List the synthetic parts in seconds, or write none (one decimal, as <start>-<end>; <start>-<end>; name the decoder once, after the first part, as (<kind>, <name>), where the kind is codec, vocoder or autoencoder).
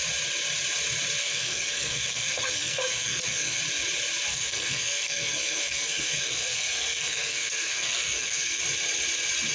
1.2-3.6 (codec, SNAC); 4.3-8.6